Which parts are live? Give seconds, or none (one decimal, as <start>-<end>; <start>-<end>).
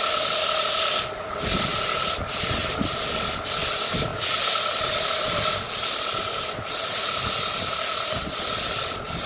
0.0-9.3